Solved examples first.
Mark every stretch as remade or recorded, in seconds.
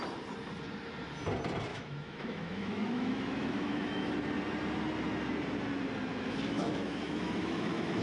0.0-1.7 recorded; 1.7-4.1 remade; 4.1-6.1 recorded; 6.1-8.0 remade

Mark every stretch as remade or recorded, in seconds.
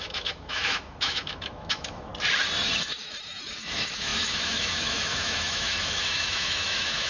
0.0-2.1 remade; 2.1-2.8 recorded; 2.8-7.1 remade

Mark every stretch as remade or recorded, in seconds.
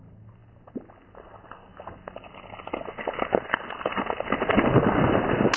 0.0-5.6 recorded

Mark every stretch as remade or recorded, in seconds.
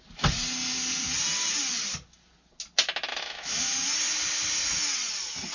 0.0-3.1 recorded; 3.1-3.6 remade; 3.6-5.5 recorded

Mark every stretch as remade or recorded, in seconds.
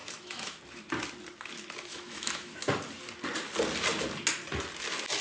0.0-0.6 remade; 0.6-1.9 recorded; 1.9-2.6 remade; 2.6-5.2 recorded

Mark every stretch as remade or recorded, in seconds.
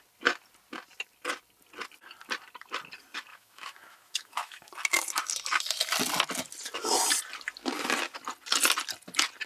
0.0-3.3 recorded; 3.3-4.7 remade; 4.7-9.5 recorded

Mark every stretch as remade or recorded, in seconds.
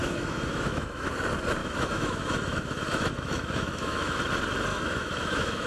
0.0-1.1 remade; 1.1-1.6 recorded; 1.6-4.2 remade; 4.2-4.7 recorded; 4.7-5.7 remade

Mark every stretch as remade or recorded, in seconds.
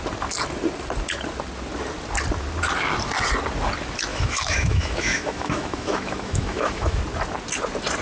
0.0-4.1 recorded; 4.1-7.0 remade; 7.0-8.0 recorded